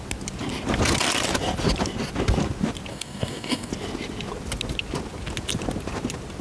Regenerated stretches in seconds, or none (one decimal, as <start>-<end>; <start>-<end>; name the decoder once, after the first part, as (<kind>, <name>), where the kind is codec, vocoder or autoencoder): 2.9-3.7 (codec, DAC)